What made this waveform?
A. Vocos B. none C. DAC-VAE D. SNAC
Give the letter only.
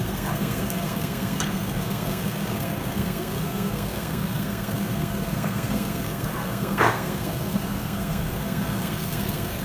D